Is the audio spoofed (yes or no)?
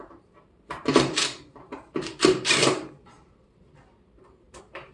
yes